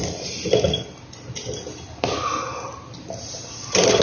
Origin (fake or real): real